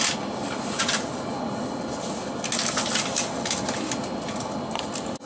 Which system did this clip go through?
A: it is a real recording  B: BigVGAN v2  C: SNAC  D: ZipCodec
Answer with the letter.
A